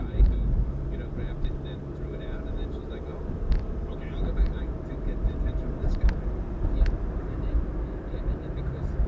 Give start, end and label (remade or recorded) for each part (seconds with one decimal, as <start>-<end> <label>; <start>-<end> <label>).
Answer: 0.0-9.1 remade

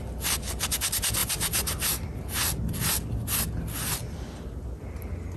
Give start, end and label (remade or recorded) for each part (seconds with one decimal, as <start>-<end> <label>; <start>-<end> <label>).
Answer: 0.0-1.2 recorded; 1.2-2.2 remade; 2.2-5.4 recorded

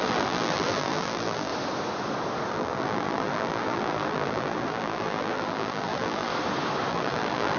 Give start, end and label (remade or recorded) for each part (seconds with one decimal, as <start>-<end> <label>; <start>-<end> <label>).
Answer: 0.0-1.5 remade; 1.5-2.5 recorded; 2.5-6.3 remade; 6.3-6.9 recorded; 6.9-7.6 remade

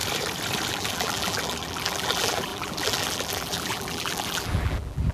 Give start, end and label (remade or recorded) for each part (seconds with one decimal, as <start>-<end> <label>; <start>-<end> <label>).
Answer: 0.0-0.7 recorded; 0.7-5.1 remade

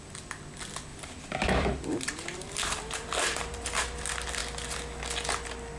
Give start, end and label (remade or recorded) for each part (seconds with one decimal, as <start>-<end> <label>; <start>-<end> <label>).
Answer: 0.0-0.9 recorded; 0.9-3.8 remade; 3.8-5.8 recorded

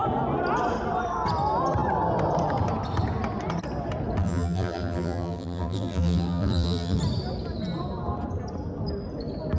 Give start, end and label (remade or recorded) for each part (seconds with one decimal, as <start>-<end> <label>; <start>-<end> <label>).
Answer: 0.0-4.2 recorded; 4.2-7.0 remade; 7.0-9.6 recorded

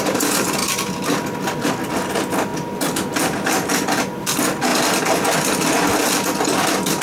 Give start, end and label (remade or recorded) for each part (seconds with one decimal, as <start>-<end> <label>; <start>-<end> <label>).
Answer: 0.0-7.0 recorded